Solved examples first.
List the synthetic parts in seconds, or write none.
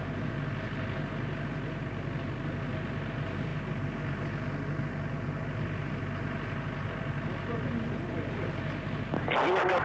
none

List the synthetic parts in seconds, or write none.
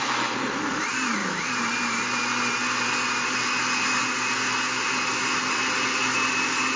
none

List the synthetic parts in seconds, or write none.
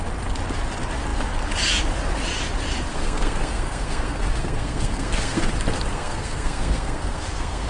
2.9-5.5 (codec, SNAC); 5.9-7.7